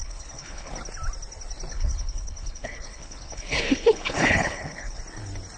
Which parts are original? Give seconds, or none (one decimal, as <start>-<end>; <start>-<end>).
0.7-1.7; 5.0-5.6